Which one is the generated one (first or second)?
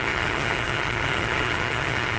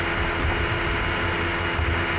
first